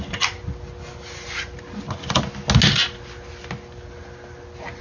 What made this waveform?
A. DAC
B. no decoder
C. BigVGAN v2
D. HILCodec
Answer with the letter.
B